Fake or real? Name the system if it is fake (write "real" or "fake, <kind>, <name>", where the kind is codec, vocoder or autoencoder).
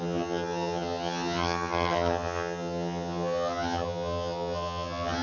fake, vocoder, HiFi-GAN